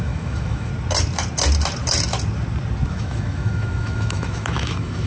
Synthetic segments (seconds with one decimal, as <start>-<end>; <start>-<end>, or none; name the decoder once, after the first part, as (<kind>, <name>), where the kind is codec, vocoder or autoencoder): 0.0-0.7 (autoencoder, DAC-VAE); 2.9-5.1